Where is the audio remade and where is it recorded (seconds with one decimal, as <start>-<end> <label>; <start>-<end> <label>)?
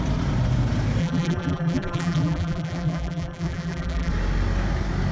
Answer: 0.0-1.0 recorded; 1.0-4.1 remade; 4.1-5.1 recorded